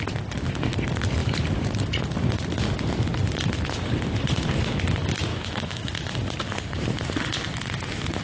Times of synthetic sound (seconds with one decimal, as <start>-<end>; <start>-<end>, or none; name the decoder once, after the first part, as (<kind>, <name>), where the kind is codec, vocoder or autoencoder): 5.3-5.9 (autoencoder, DAC-VAE)